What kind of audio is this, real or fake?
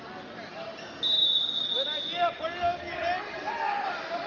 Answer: real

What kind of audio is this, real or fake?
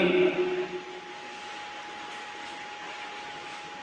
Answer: real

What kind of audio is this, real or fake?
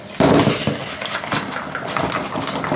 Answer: real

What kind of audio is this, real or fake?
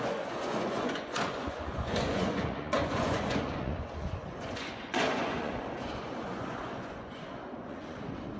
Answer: fake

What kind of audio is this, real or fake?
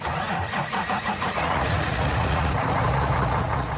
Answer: fake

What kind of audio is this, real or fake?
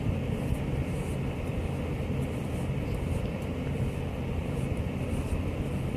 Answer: real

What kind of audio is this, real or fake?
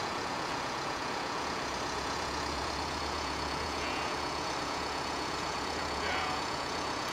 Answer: fake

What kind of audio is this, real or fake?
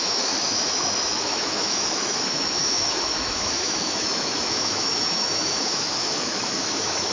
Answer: fake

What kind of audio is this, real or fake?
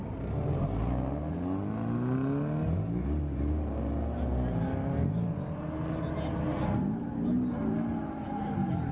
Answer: real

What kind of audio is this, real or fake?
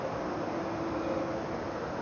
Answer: real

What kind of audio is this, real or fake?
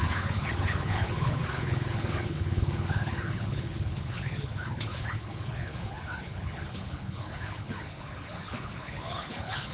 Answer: fake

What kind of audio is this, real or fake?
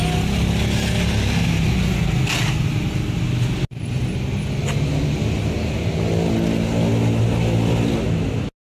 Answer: real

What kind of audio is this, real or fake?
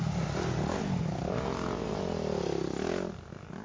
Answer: real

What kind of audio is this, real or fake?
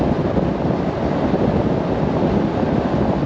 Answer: real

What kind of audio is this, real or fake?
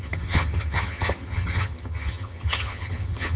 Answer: fake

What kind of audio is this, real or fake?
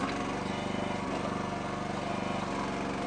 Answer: real